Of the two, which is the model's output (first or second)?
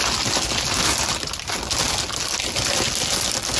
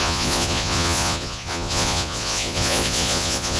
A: second